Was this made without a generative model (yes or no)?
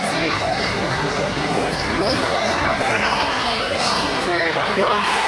no